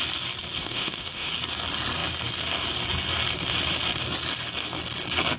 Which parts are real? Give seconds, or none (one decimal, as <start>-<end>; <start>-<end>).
0.0-0.6; 1.3-5.4

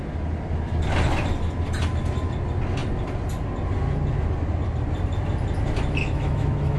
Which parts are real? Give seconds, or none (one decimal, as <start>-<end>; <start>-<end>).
0.0-6.0

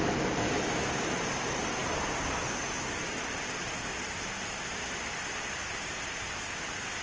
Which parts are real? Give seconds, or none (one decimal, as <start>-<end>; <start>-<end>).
0.0-7.0

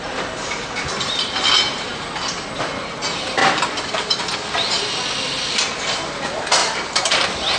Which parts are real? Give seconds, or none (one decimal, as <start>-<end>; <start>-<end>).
0.0-3.4; 4.2-6.6

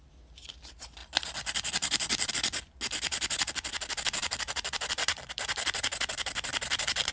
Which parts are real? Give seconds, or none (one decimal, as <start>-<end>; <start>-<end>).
0.0-1.0; 2.3-4.2